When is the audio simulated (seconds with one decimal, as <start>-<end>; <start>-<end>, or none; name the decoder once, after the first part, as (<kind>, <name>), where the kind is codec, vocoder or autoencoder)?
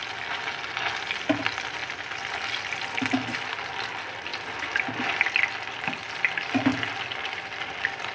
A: none